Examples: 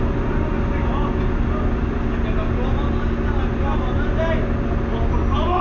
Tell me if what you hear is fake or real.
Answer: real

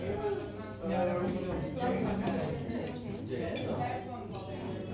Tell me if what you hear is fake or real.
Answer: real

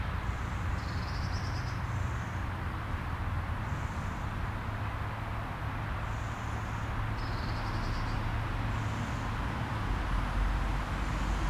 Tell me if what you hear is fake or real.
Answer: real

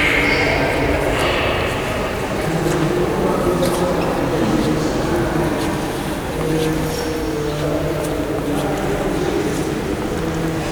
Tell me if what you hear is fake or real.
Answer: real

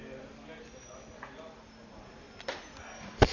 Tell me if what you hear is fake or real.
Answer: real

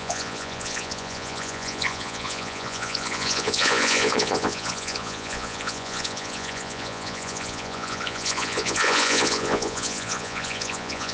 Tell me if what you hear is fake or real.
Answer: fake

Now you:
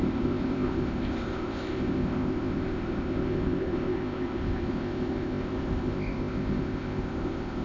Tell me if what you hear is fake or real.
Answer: fake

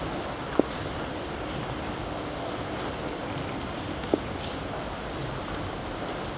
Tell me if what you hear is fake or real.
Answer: real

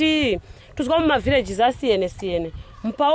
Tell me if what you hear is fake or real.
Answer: real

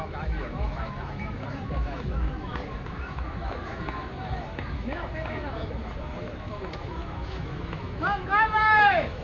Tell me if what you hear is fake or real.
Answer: fake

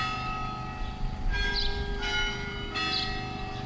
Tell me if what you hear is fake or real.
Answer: real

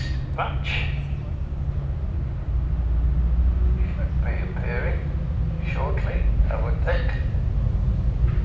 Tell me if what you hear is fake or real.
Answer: real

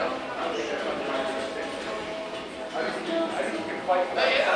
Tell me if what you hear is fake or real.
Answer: real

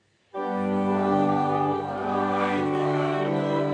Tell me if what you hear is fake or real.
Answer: fake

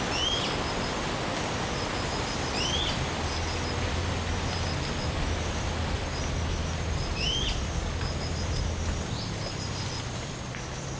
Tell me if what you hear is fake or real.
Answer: real